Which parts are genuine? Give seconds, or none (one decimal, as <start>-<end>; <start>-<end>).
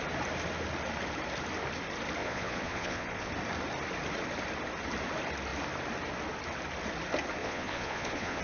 0.0-2.2; 3.3-7.4